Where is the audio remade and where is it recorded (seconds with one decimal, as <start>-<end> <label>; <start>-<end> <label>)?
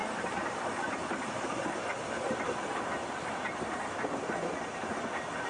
0.0-5.5 recorded